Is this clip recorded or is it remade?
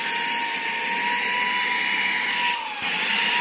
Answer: recorded